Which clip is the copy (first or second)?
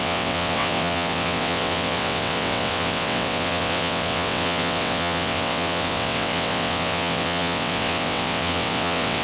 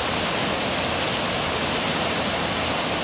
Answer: first